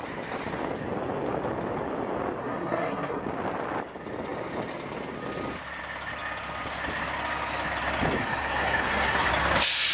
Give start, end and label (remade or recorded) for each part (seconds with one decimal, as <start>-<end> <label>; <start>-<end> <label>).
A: 0.0-2.4 recorded; 2.4-3.2 remade; 3.2-8.2 recorded; 8.2-9.3 remade; 9.3-9.9 recorded